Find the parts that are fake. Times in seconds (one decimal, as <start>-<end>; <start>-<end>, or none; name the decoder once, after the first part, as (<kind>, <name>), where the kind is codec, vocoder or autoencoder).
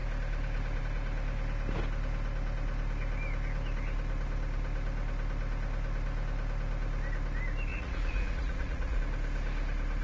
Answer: 7.7-9.0 (vocoder, Vocos)